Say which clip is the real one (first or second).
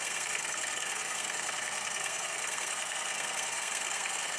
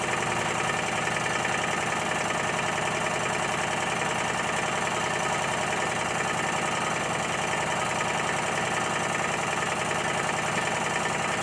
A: second